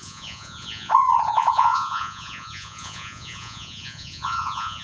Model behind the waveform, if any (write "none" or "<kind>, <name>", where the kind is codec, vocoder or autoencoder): vocoder, Vocos